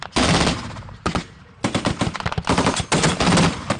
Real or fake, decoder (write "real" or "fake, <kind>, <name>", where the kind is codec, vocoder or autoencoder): real